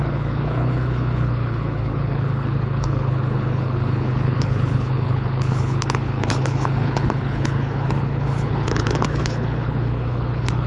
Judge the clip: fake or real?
fake